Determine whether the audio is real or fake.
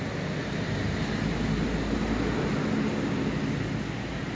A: real